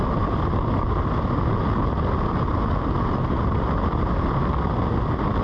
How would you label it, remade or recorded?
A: recorded